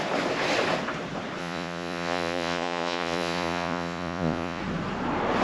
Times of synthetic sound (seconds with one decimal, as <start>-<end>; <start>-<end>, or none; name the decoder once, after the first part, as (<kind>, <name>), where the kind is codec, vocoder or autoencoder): 1.4-4.6 (vocoder, Vocos)